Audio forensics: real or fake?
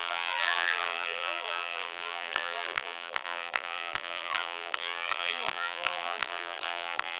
fake